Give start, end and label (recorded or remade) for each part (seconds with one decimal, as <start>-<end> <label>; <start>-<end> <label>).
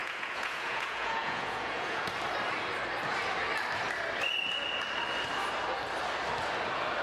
0.0-2.1 remade; 2.1-7.0 recorded